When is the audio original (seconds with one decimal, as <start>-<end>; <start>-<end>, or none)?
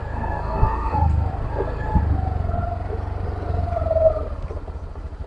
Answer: 1.3-5.3